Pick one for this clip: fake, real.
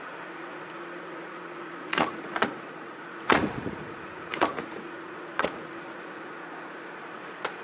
fake